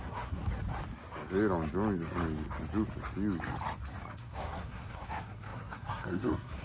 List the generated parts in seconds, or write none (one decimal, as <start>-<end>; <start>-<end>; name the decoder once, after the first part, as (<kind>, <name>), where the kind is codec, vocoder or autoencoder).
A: 0.0-0.4 (codec, SNAC); 4.1-6.6